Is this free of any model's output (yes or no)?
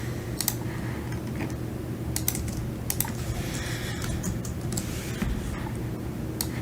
yes